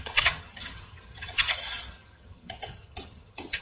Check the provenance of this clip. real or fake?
fake